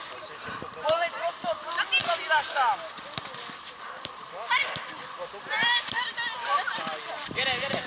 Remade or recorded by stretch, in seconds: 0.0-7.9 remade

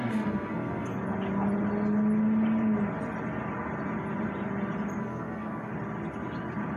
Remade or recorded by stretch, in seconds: 0.0-0.9 remade; 0.9-5.0 recorded; 5.0-5.7 remade; 5.7-6.8 recorded

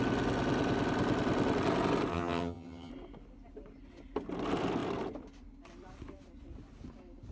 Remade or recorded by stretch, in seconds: 0.0-2.1 recorded; 2.1-2.9 remade; 2.9-7.3 recorded

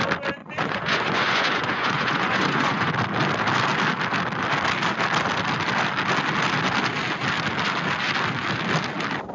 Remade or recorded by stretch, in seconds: 0.0-0.4 recorded; 0.4-2.9 remade; 2.9-9.3 recorded

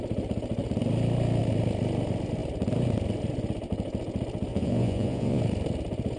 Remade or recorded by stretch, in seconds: 0.0-4.5 recorded; 4.5-5.4 remade; 5.4-6.2 recorded